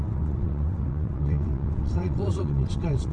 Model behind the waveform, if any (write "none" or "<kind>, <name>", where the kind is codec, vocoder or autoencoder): vocoder, WaveNeXt